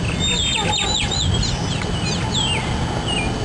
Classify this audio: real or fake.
real